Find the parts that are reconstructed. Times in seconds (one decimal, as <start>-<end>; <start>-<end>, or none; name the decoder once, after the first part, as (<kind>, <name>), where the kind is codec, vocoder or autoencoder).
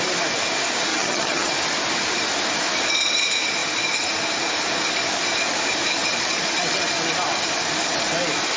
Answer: 0.9-1.5 (vocoder, HiFi-GAN)